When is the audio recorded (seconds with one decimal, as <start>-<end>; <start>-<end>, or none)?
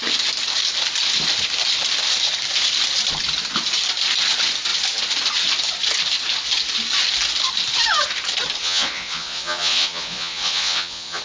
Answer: 0.0-8.6